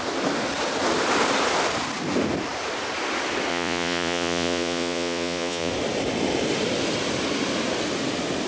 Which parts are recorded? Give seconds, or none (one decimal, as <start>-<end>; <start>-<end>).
0.0-3.5; 5.7-8.5